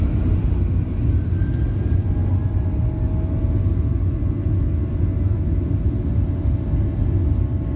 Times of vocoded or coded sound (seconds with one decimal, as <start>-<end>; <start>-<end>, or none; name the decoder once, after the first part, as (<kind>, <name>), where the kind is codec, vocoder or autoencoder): none